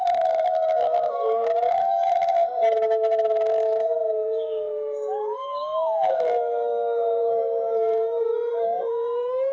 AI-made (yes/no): yes